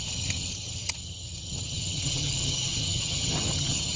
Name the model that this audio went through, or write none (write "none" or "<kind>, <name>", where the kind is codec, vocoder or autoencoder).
vocoder, HiFi-GAN